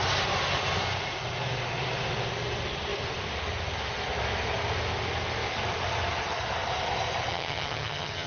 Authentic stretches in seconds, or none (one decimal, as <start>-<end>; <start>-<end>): 0.0-7.3